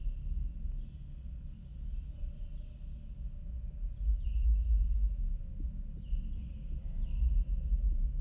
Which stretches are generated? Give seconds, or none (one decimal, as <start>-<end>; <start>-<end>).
none